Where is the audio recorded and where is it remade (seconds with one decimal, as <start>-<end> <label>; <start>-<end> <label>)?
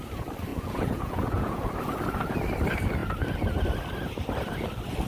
0.0-0.5 recorded; 0.5-1.6 remade; 1.6-5.1 recorded